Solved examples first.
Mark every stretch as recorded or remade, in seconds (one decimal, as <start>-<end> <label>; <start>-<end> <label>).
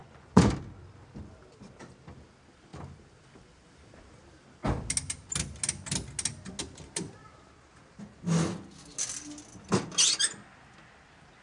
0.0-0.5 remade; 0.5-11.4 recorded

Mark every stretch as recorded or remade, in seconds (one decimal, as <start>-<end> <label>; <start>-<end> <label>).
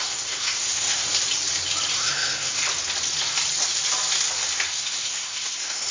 0.0-1.1 remade; 1.1-1.9 recorded; 1.9-2.6 remade; 2.6-4.7 recorded; 4.7-5.9 remade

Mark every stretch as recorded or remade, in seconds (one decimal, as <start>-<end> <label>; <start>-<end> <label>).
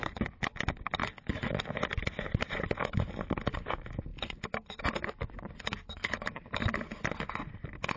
0.0-8.0 recorded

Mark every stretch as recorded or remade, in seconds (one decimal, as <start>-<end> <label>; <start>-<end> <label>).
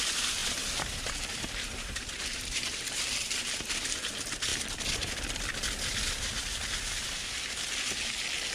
0.0-0.4 recorded; 0.4-4.1 remade; 4.1-4.5 recorded; 4.5-5.1 remade; 5.1-8.5 recorded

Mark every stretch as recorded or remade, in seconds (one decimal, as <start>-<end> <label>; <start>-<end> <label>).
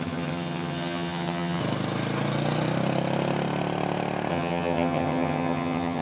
0.0-1.6 remade; 1.6-4.3 recorded; 4.3-6.0 remade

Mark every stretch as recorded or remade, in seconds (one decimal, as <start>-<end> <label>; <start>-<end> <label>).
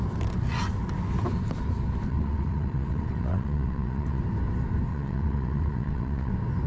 0.0-2.1 recorded; 2.1-4.2 remade; 4.2-4.9 recorded; 4.9-6.3 remade; 6.3-6.7 recorded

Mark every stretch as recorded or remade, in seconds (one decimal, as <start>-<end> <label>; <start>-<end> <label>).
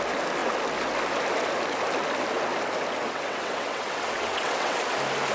0.0-3.0 recorded; 3.0-4.8 remade; 4.8-5.3 recorded